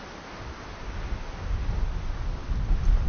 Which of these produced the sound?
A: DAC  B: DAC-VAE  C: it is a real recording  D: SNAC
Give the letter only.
C